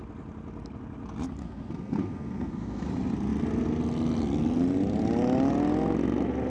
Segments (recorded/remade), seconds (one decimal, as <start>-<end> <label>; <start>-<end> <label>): 0.0-1.4 recorded; 1.4-2.9 remade; 2.9-6.5 recorded